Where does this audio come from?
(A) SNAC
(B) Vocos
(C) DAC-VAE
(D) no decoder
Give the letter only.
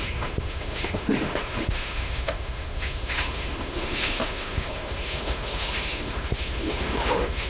C